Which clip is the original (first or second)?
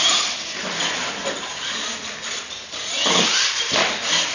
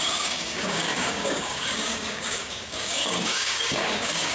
first